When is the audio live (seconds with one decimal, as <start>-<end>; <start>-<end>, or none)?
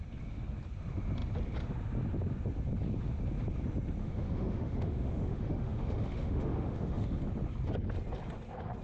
0.0-4.0; 7.2-8.8